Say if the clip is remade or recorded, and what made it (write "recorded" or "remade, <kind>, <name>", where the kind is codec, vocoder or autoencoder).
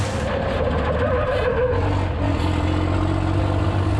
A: recorded